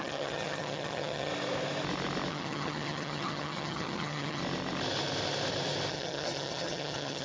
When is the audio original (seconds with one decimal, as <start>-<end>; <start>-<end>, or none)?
1.3-2.3; 4.4-5.9

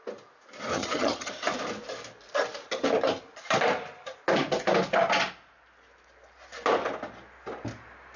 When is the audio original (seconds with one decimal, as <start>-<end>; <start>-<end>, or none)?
0.0-0.7; 1.3-8.2

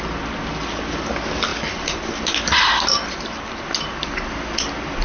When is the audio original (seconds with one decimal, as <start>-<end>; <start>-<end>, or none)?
0.0-5.0

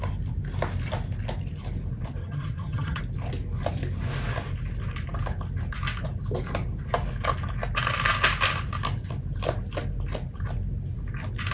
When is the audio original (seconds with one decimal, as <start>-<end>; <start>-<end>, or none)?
0.0-2.2; 3.0-11.5